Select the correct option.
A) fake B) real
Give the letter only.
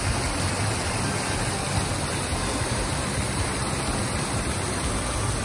B